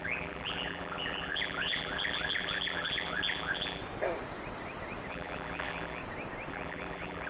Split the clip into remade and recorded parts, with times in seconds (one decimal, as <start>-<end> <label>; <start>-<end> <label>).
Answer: 0.0-3.8 remade; 3.8-5.1 recorded; 5.1-6.0 remade; 6.0-6.5 recorded; 6.5-7.3 remade

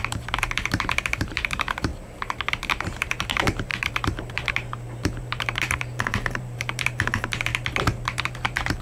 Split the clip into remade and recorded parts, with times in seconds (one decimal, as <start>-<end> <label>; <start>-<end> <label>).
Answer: 0.0-1.9 remade; 1.9-2.5 recorded; 2.5-7.5 remade; 7.5-8.2 recorded; 8.2-8.8 remade

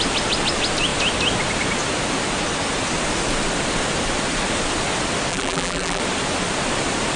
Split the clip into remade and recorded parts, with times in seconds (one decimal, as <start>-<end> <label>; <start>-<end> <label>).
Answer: 0.0-5.3 recorded; 5.3-6.0 remade; 6.0-7.2 recorded

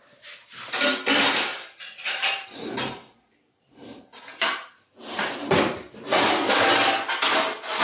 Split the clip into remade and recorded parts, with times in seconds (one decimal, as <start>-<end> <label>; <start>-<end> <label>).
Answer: 0.0-1.5 recorded; 1.5-6.2 remade; 6.2-7.8 recorded

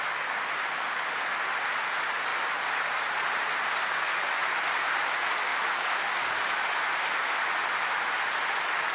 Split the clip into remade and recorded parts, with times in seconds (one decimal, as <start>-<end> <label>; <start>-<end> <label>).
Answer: 0.0-2.3 recorded; 2.3-3.1 remade; 3.1-8.9 recorded

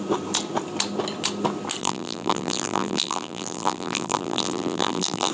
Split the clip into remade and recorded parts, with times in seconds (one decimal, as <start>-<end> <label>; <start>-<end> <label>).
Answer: 0.0-1.8 recorded; 1.8-5.3 remade

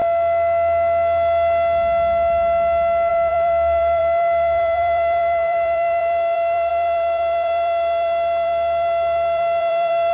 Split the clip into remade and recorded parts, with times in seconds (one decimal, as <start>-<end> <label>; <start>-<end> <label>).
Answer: 0.0-3.1 recorded; 3.1-10.1 remade

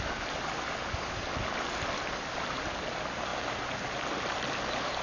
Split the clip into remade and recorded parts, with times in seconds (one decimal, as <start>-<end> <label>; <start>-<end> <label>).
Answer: 0.0-3.3 recorded; 3.3-5.0 remade